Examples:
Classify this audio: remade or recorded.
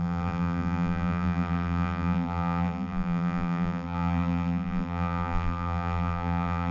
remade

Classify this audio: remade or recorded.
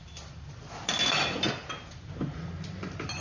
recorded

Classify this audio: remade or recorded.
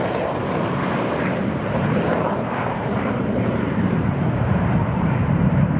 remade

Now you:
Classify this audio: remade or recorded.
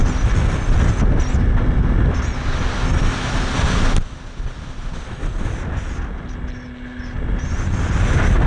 recorded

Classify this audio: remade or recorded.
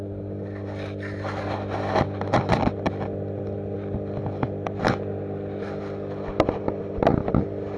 recorded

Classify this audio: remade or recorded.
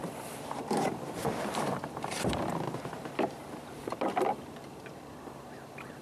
remade